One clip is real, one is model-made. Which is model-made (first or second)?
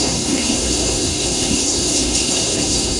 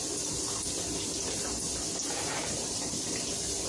first